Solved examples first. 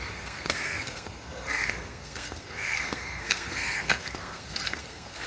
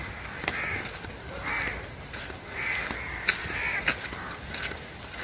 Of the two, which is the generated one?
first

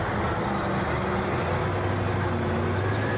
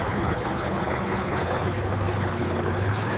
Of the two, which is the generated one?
second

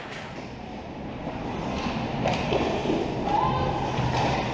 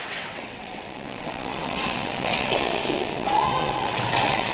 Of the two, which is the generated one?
second